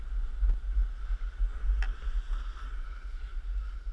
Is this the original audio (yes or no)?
yes